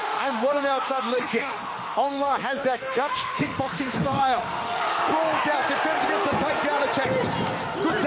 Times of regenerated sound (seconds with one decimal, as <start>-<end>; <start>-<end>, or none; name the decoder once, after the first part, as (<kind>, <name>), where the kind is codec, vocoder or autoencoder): 0.0-4.9 (autoencoder, DAC-VAE)